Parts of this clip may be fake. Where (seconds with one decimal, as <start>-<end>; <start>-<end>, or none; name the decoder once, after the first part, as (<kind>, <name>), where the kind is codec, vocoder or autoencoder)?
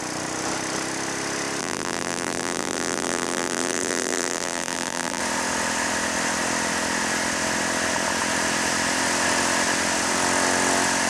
1.6-5.2 (vocoder, BigVGAN v2)